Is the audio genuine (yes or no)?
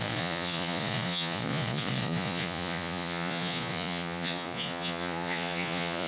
no